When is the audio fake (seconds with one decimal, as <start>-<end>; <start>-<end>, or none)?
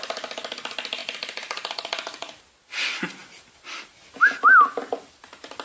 1.0-2.4